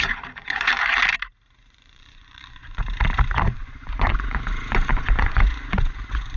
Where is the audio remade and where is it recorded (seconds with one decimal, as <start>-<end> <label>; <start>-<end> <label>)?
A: 0.0-0.7 remade; 0.7-1.6 recorded; 1.6-2.8 remade; 2.8-3.5 recorded; 3.5-6.4 remade